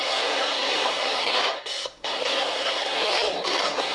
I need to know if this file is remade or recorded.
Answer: remade